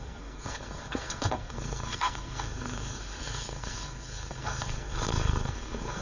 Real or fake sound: fake